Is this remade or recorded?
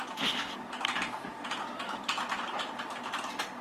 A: recorded